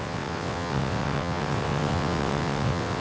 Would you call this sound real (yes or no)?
no